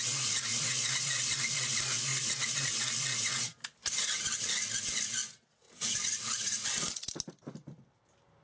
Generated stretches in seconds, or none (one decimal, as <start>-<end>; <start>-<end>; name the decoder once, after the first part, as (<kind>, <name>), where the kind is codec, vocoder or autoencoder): none